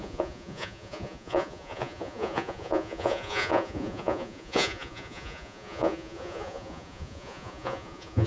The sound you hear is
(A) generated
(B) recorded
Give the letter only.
A